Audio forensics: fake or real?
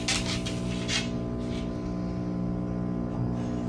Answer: real